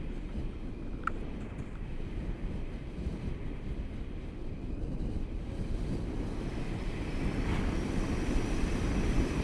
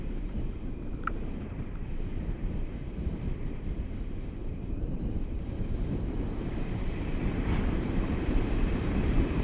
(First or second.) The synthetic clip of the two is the second